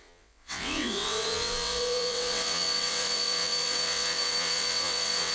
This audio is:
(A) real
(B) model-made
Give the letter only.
B